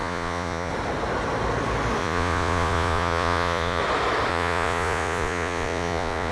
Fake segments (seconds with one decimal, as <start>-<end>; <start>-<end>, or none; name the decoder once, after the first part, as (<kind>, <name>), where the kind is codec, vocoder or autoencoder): 0.0-0.7 (vocoder, Vocos); 2.0-3.8; 4.3-6.3